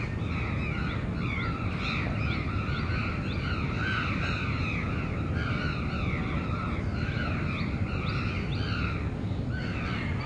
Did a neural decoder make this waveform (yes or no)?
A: no